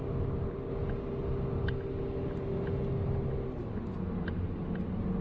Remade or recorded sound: recorded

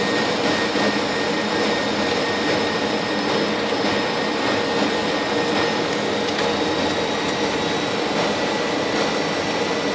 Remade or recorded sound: recorded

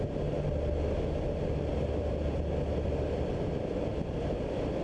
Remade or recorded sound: recorded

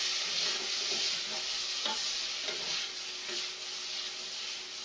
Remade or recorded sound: recorded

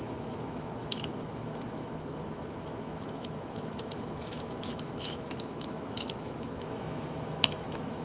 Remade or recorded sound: remade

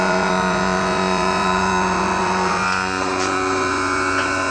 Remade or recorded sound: remade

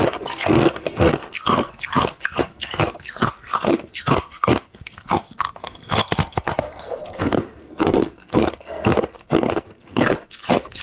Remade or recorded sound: remade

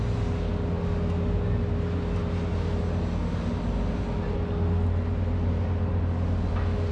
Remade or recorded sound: recorded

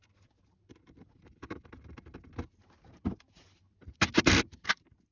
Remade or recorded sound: recorded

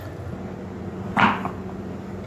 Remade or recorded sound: recorded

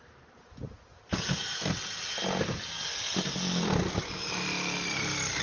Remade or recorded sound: recorded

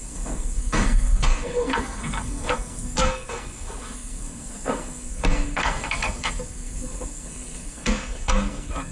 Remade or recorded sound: remade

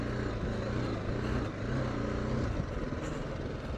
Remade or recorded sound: recorded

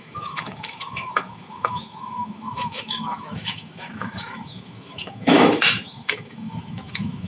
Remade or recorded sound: remade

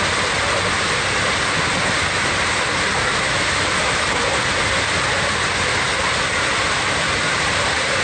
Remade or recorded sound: recorded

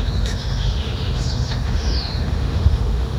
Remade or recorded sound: remade